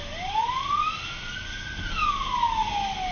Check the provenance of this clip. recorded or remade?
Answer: recorded